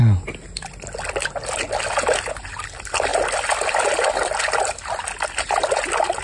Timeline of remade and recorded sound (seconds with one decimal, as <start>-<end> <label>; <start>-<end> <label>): 0.0-6.2 recorded